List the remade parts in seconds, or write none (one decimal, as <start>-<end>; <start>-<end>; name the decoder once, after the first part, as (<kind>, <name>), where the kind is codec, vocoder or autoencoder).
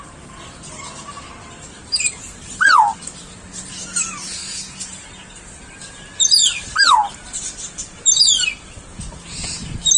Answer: 4.4-5.5 (vocoder, Vocos)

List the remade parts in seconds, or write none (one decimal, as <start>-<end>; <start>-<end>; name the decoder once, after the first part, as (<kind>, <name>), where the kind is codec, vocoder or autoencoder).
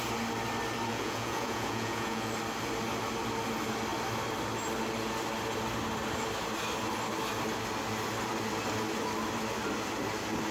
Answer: 0.9-2.3 (vocoder, Vocos)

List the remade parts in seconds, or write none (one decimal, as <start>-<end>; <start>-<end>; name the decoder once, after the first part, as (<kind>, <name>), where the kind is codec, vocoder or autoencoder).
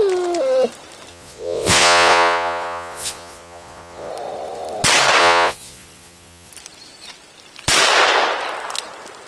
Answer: 1.1-4.1 (vocoder, Vocos); 5.2-6.5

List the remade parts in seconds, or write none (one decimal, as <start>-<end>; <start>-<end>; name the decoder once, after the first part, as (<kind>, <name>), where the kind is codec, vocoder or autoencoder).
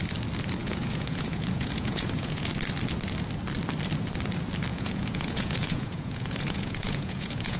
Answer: 0.6-2.5 (vocoder, Vocos); 4.7-7.6